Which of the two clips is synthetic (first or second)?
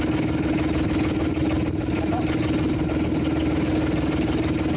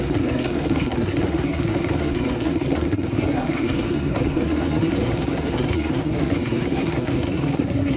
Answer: second